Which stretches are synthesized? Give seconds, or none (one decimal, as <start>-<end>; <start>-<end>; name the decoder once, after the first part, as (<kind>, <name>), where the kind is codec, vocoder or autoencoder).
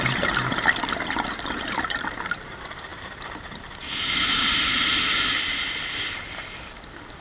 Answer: none